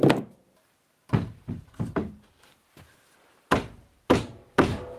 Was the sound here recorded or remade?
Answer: recorded